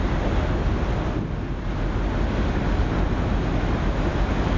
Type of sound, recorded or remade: recorded